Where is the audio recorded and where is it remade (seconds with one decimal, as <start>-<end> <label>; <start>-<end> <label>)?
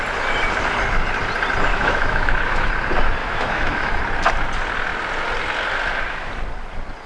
0.0-1.7 recorded; 1.7-2.7 remade; 2.7-3.2 recorded; 3.2-4.0 remade; 4.0-7.1 recorded